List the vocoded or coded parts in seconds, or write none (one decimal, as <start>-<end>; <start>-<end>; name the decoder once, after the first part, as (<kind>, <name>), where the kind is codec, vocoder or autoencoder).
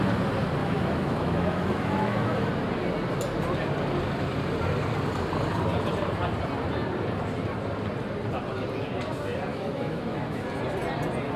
0.6-2.5 (autoencoder, DAC-VAE); 9.5-10.4